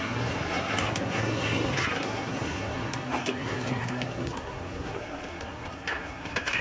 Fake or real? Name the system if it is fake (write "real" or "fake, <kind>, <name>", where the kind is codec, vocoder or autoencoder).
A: fake, codec, SNAC